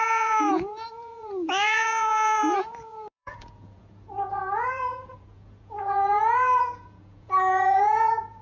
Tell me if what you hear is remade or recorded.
remade